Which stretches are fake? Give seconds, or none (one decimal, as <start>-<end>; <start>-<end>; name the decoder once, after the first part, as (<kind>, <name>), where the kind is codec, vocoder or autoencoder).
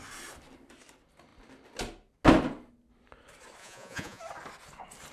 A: 3.6-4.2 (vocoder, Vocos)